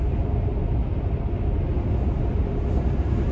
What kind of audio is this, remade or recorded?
recorded